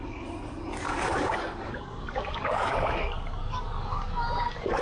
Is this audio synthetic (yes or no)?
yes